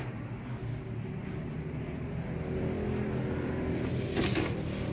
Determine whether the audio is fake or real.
real